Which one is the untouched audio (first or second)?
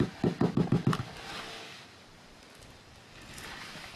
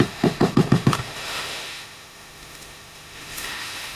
first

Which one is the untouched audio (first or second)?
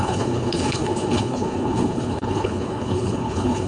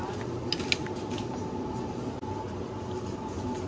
second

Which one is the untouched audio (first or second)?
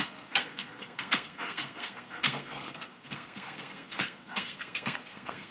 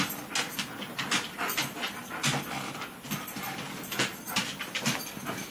second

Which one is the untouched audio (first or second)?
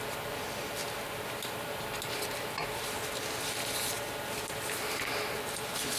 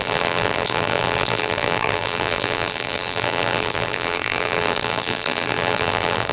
first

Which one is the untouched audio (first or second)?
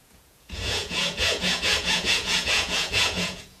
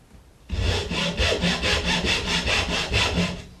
second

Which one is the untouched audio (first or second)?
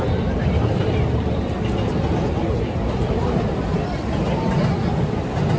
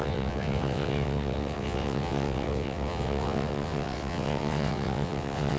first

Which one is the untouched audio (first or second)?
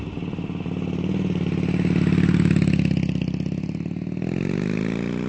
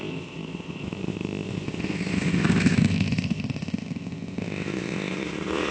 first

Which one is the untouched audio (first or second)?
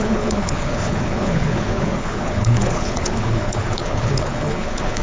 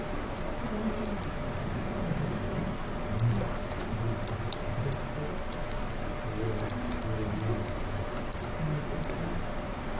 second